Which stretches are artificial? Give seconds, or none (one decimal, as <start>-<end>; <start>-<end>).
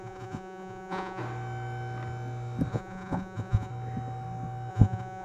0.0-1.2; 2.7-3.7; 4.7-5.2